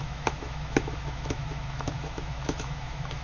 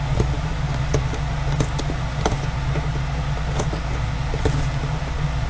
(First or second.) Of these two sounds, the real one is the second